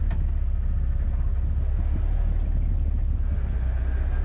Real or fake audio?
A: real